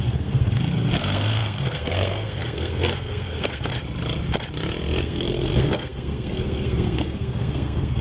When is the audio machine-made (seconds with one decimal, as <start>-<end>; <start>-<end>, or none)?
0.0-3.7; 5.0-8.0